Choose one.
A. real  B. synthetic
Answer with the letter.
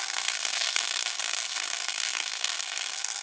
B